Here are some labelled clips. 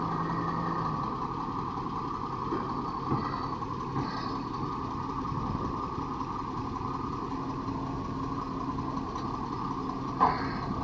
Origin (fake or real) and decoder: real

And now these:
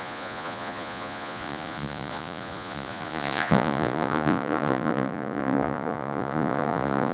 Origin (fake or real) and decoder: fake, vocoder, Vocos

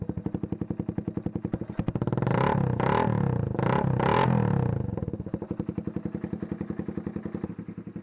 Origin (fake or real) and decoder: real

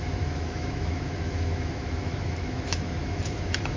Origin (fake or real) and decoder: fake, autoencoder, DAC-VAE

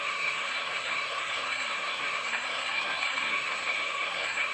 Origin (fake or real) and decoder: fake, codec, SNAC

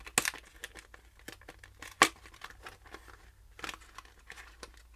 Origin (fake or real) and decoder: real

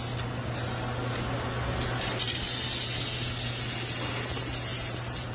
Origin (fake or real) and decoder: real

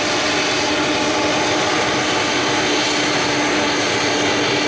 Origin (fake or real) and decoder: real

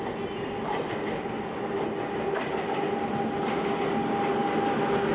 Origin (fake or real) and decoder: real